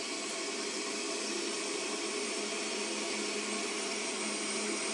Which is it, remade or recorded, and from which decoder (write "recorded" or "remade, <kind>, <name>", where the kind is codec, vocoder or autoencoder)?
recorded